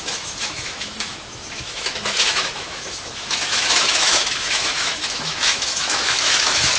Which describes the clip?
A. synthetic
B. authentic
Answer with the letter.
A